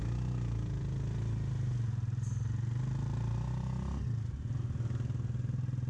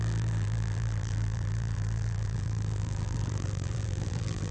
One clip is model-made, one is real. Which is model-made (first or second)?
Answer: second